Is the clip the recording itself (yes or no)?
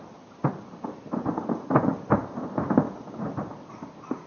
yes